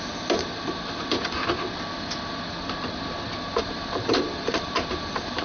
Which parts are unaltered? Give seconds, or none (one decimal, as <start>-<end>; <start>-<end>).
1.4-3.6

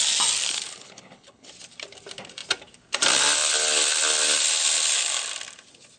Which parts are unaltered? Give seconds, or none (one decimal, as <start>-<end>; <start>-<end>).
0.0-0.5; 1.5-6.0

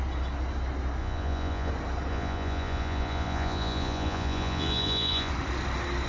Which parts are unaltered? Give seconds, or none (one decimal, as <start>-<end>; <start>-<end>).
0.0-1.0; 1.7-2.1; 5.3-6.1

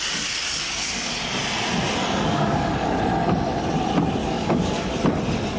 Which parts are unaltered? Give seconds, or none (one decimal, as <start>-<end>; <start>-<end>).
0.0-0.4; 1.1-2.0; 3.0-4.2; 5.0-5.6

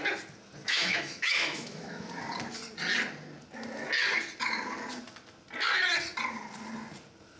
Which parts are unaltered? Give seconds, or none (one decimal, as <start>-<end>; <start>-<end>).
0.0-0.6; 2.1-7.4

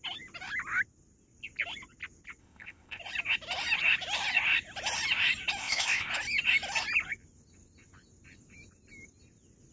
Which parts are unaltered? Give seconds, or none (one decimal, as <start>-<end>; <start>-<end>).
0.0-2.4; 3.0-5.6; 6.1-9.7

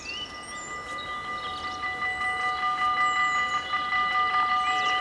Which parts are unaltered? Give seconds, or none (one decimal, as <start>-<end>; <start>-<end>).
0.0-5.0